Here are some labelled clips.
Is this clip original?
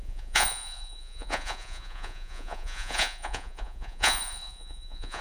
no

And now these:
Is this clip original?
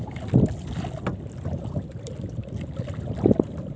yes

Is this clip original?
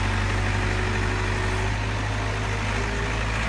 yes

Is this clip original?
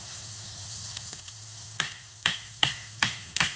no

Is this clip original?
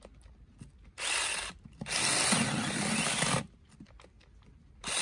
yes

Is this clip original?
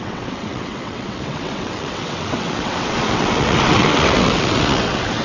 no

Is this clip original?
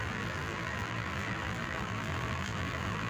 no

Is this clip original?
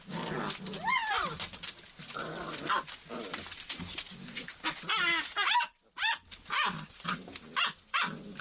yes